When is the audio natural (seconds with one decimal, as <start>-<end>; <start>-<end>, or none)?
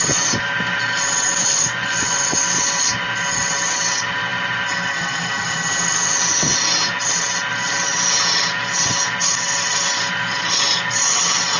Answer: 0.0-1.4; 2.4-11.6